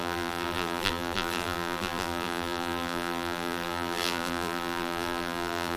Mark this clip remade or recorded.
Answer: remade